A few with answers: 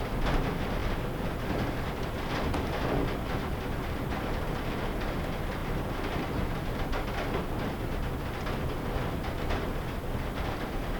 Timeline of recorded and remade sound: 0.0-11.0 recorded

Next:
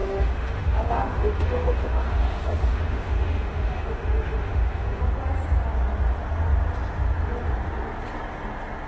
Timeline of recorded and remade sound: 0.0-5.0 remade; 5.0-8.9 recorded